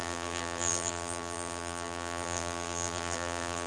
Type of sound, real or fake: fake